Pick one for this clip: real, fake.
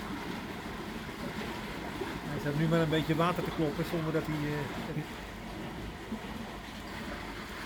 real